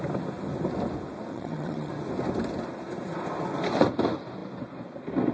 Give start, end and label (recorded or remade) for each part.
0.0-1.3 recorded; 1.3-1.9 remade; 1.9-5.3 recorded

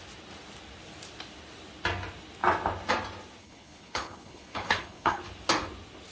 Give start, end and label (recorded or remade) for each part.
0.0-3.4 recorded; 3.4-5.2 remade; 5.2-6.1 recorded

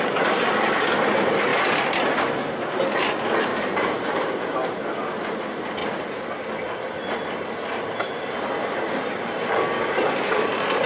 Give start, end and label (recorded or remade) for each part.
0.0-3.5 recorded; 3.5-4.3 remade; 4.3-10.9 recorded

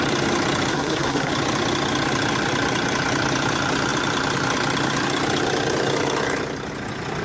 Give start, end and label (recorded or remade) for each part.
0.0-0.7 recorded; 0.7-1.3 remade; 1.3-7.2 recorded

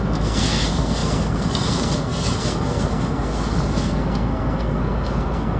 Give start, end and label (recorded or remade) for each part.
0.0-5.6 remade

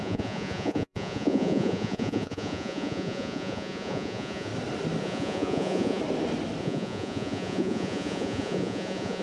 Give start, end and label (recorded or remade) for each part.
0.0-4.5 remade; 4.5-5.0 recorded; 5.0-6.0 remade; 6.0-6.6 recorded; 6.6-9.2 remade

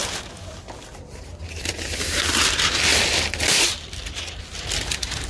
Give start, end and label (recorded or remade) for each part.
0.0-1.5 recorded; 1.5-5.3 remade

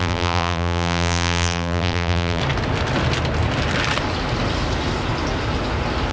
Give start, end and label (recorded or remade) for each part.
0.0-2.4 remade; 2.4-6.1 recorded